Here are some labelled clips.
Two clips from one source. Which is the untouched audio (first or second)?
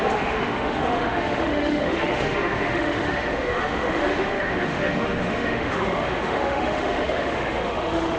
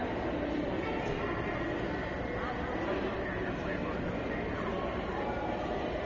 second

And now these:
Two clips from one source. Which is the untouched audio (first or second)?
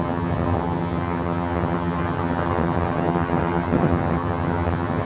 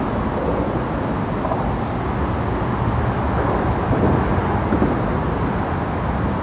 second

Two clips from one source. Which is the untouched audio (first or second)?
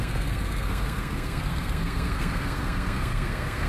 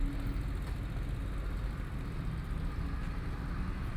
second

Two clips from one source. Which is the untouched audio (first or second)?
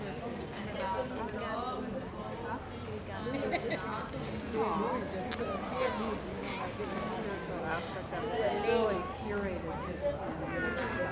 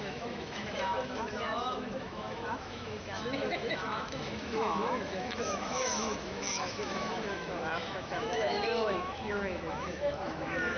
first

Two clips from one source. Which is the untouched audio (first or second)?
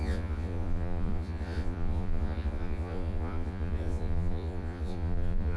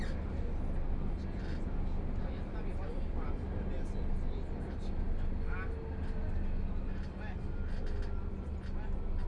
second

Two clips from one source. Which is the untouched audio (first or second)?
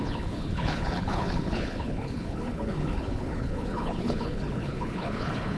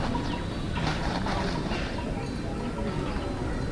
second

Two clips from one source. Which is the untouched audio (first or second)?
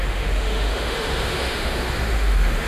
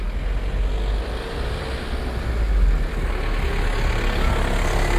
second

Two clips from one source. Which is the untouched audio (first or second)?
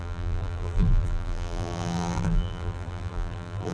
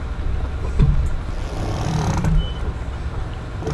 second